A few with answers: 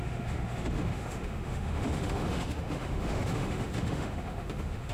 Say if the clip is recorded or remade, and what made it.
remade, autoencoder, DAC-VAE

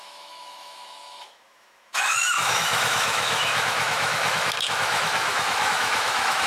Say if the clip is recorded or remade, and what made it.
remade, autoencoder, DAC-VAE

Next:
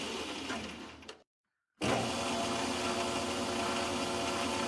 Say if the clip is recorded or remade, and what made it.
recorded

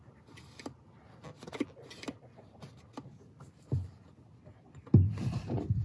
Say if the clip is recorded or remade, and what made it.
recorded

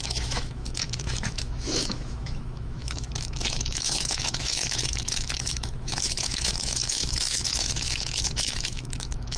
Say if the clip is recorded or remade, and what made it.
remade, autoencoder, DAC-VAE